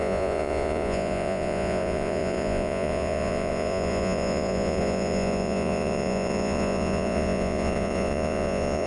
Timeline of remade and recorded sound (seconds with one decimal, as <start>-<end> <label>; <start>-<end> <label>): 0.0-8.9 remade